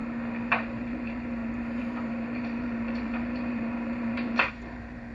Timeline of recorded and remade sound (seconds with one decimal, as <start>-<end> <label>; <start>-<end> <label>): 0.0-0.5 recorded; 0.5-5.1 remade